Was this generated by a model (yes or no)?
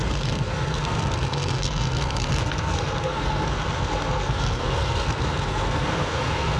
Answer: yes